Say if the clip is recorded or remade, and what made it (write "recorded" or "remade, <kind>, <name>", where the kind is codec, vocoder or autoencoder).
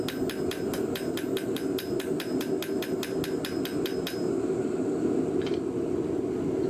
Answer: recorded